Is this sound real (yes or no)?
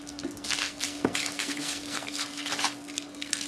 no